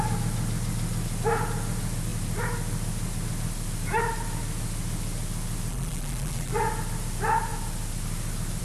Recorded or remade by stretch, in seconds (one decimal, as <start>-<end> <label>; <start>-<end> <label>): 0.0-5.7 recorded; 5.7-6.5 remade; 6.5-8.6 recorded